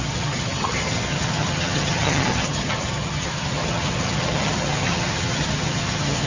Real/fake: fake